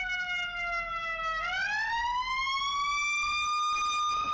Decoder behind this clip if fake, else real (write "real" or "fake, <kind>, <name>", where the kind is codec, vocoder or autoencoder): real